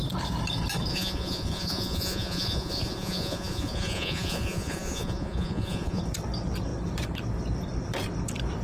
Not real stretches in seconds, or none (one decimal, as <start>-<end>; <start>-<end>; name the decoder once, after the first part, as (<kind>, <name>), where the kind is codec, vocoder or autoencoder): 0.9-6.0 (vocoder, Vocos)